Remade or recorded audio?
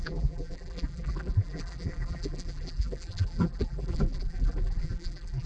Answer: remade